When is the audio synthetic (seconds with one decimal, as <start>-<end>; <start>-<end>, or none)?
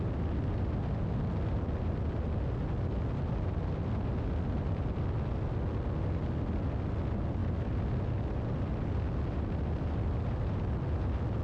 none